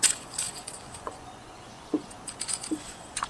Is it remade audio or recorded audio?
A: remade